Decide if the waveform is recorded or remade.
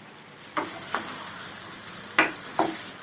recorded